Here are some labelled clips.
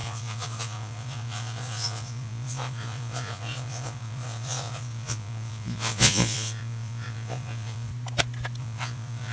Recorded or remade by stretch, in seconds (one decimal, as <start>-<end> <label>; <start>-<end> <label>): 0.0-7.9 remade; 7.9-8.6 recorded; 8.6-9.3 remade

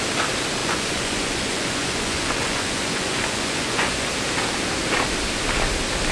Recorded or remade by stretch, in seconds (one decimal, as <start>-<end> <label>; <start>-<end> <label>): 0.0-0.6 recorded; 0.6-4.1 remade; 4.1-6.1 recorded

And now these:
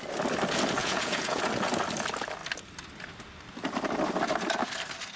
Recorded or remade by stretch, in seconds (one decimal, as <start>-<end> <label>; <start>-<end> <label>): 0.0-0.8 recorded; 0.8-1.4 remade; 1.4-5.2 recorded

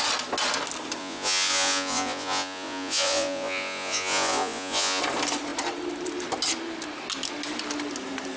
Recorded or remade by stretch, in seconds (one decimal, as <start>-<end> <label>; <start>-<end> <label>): 0.0-1.0 recorded; 1.0-5.0 remade; 5.0-8.4 recorded